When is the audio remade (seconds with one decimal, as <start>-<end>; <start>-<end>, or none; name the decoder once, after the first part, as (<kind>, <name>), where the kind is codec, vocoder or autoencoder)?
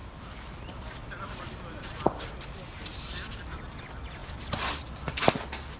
0.0-3.1 (vocoder, BigVGAN v2); 4.2-5.2